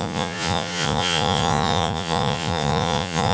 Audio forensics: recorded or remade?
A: remade